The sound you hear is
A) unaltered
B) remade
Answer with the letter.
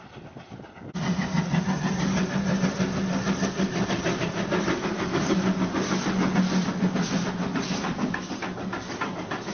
A